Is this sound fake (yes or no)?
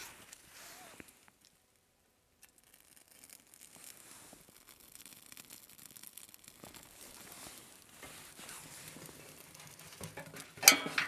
no